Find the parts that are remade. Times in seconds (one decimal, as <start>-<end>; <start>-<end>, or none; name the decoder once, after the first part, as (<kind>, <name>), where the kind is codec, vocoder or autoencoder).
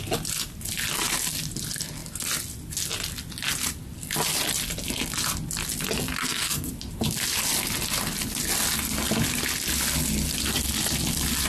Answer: 6.2-6.7 (codec, SNAC)